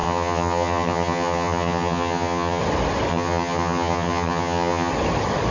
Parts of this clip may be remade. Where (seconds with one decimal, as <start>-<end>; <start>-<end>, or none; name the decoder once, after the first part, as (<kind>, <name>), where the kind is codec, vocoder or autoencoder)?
0.0-2.6 (vocoder, HiFi-GAN); 3.1-4.9